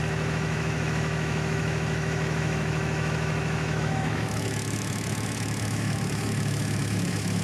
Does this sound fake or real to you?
fake